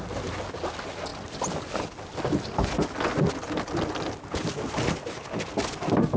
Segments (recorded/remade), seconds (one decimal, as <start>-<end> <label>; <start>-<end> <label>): 0.0-6.2 recorded